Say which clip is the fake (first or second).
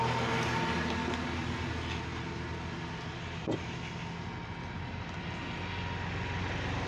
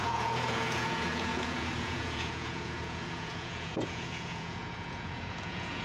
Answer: second